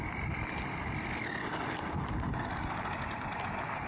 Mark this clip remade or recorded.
recorded